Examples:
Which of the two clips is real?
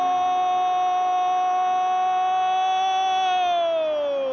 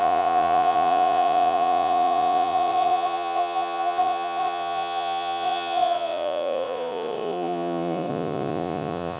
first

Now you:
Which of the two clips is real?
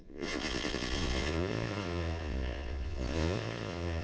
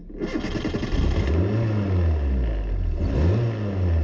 second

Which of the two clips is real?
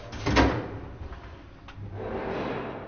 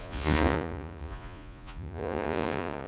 first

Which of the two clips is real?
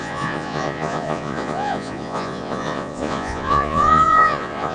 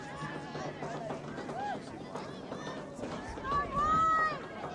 second